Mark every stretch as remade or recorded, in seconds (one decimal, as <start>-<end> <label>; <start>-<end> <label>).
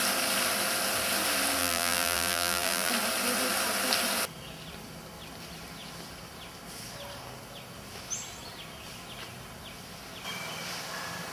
0.0-1.6 recorded; 1.6-2.9 remade; 2.9-11.3 recorded